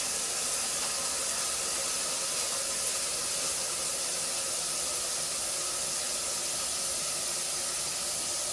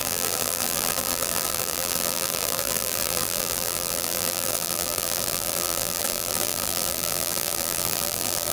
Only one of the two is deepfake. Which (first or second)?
second